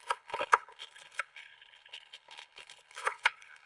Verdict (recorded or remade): remade